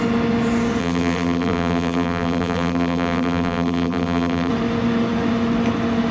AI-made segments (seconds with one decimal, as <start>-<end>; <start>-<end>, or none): 0.8-4.5